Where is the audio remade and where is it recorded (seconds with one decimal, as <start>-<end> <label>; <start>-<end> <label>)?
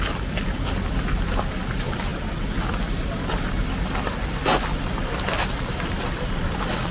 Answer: 0.0-6.9 recorded